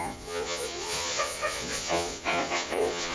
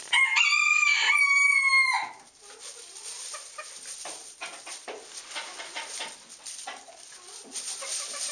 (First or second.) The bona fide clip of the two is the second